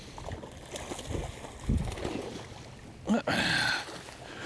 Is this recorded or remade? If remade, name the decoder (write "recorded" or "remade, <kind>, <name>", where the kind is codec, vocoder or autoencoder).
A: recorded